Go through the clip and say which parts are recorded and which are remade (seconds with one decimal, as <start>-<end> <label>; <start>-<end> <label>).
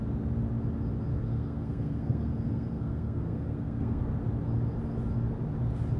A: 0.0-1.1 recorded; 1.1-4.0 remade; 4.0-6.0 recorded